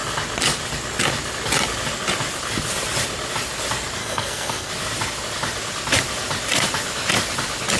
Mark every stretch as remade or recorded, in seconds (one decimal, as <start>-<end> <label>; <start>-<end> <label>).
0.0-4.0 recorded; 4.0-4.7 remade; 4.7-7.8 recorded